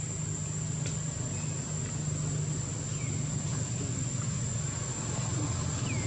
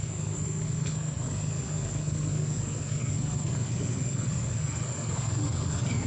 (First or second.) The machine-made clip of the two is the second